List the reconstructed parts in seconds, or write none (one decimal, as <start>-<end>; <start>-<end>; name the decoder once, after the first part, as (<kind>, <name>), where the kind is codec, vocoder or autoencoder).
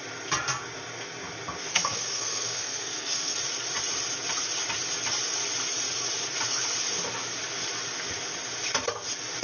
1.7-3.4 (codec, SNAC)